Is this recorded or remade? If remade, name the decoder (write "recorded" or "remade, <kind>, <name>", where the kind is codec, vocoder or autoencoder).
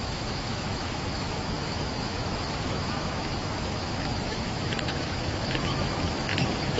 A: remade, autoencoder, DAC-VAE